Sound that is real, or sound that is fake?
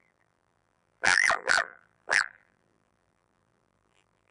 fake